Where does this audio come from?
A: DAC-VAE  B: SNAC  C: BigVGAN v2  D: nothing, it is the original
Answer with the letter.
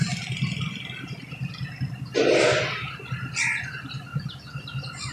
D